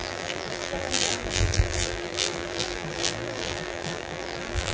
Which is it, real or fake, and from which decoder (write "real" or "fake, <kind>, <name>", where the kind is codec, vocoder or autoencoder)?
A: fake, vocoder, BigVGAN v2